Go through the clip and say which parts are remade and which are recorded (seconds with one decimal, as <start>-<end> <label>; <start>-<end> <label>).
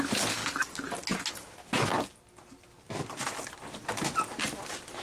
0.0-0.4 remade; 0.4-1.3 recorded; 1.3-1.9 remade; 1.9-5.0 recorded